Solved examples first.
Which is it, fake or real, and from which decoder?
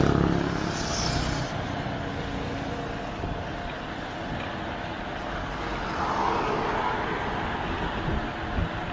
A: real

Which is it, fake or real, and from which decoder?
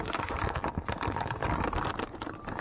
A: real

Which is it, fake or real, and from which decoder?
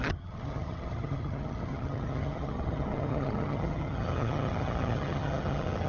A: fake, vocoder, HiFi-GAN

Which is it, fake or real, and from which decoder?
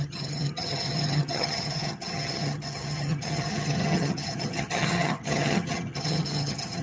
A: fake, vocoder, HiFi-GAN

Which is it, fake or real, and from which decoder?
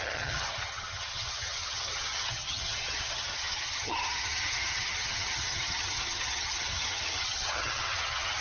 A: fake, vocoder, HiFi-GAN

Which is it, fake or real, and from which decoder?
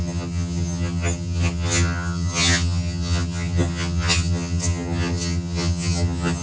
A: fake, vocoder, HiFi-GAN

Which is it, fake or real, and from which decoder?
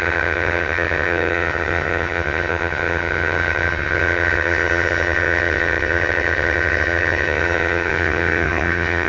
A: fake, vocoder, HiFi-GAN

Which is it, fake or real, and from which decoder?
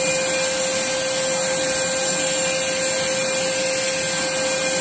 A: real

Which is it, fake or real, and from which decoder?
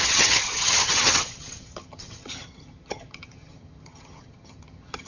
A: fake, vocoder, HiFi-GAN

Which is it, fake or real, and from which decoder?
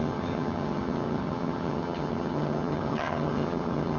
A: fake, vocoder, HiFi-GAN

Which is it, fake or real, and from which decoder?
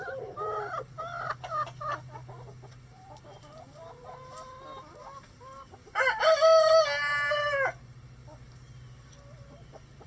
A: real